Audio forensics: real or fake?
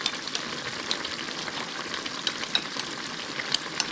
real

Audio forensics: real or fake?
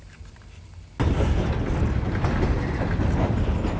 fake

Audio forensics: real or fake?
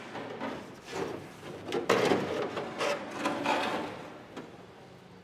real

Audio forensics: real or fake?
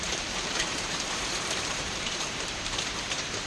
fake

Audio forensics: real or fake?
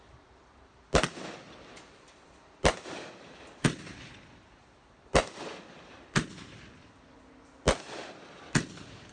fake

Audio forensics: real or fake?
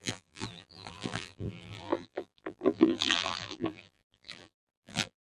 fake